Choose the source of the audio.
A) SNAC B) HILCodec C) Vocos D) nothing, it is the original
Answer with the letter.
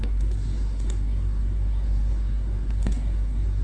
A